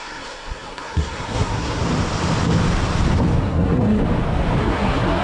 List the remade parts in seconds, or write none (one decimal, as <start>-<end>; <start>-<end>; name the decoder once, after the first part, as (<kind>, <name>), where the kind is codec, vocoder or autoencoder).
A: 0.0-1.8 (codec, SNAC); 3.4-4.0; 4.6-5.2